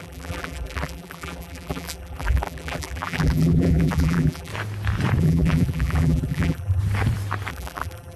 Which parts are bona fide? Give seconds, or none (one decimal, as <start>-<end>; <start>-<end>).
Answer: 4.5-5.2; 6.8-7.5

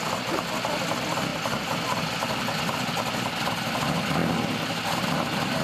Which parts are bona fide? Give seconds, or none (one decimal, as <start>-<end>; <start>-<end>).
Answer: 0.0-5.6

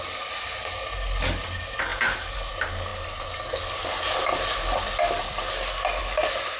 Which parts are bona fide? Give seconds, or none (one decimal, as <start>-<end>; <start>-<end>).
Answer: 0.0-1.9; 2.5-6.6